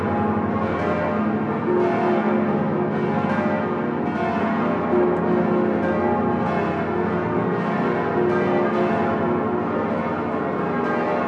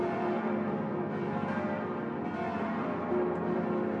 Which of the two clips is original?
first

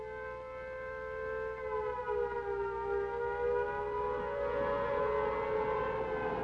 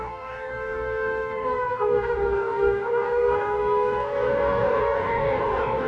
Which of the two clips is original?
first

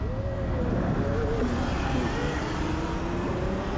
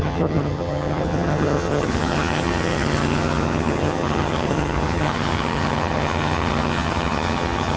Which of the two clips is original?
first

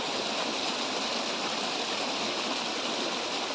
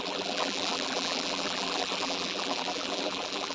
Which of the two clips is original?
first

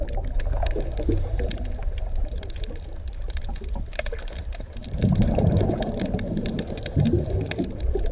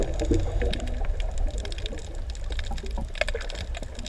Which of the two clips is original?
second